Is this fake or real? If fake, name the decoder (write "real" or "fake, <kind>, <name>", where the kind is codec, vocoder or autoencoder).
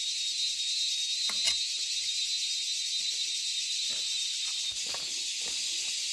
real